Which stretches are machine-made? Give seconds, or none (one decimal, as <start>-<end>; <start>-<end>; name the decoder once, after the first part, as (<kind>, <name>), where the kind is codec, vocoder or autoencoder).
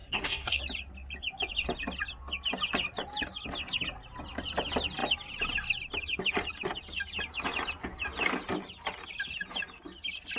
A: 0.0-0.6 (codec, SNAC)